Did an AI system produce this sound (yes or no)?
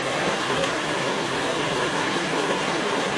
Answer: yes